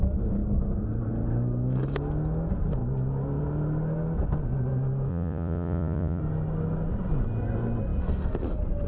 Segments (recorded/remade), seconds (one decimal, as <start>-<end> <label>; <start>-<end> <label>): 0.0-5.1 recorded; 5.1-6.2 remade; 6.2-8.9 recorded